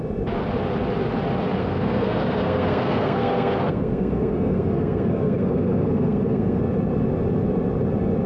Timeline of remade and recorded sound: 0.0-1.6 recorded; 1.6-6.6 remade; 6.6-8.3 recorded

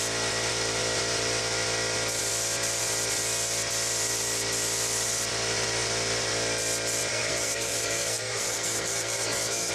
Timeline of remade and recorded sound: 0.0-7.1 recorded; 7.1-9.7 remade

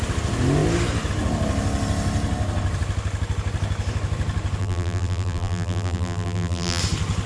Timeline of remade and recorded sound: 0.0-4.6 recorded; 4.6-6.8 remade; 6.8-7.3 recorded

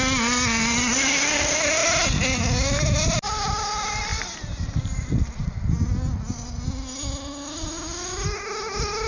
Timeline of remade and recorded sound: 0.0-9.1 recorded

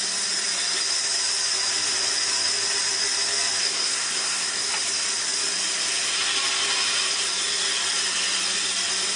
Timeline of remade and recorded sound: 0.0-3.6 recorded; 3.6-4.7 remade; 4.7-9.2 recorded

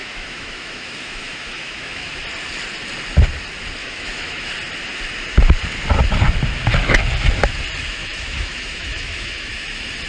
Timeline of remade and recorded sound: 0.0-2.1 remade; 2.1-3.8 recorded; 3.8-4.5 remade; 4.5-8.0 recorded; 8.0-9.5 remade; 9.5-10.1 recorded

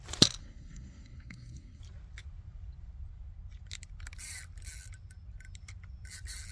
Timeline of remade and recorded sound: 0.0-0.4 recorded; 0.4-1.8 remade; 1.8-6.5 recorded